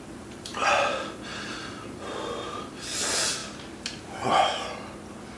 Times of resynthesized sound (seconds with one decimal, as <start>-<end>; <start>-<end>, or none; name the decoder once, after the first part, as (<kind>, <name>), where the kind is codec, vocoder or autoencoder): 0.0-3.4 (vocoder, BigVGAN v2); 4.0-4.5